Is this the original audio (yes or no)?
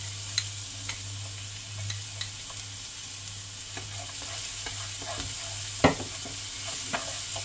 yes